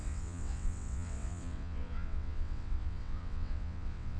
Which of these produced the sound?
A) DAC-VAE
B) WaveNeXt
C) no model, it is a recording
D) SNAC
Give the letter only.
B